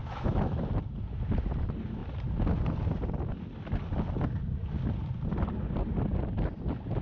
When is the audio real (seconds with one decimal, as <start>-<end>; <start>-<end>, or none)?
0.6-7.0